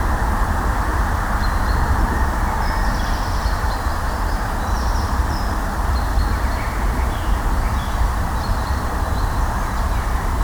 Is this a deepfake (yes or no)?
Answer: yes